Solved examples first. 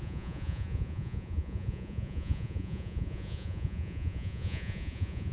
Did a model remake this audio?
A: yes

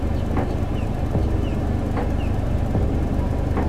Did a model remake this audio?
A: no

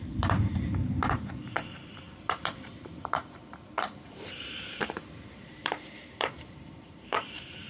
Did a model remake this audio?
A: yes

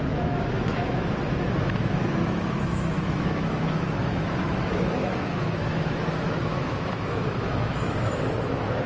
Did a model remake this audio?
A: yes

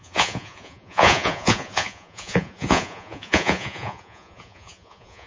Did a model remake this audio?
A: yes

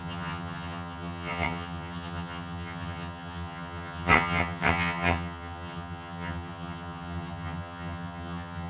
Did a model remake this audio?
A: yes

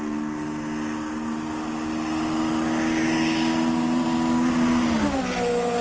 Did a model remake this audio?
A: no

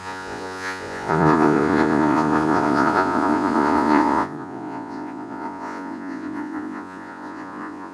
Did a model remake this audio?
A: yes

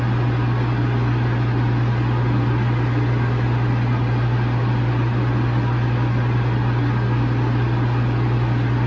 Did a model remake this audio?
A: no